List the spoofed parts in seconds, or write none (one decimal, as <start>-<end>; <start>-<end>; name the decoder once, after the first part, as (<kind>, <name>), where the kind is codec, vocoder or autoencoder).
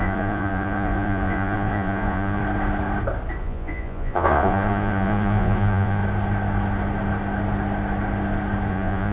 0.0-2.4 (vocoder, Vocos); 3.4-6.0; 8.7-9.1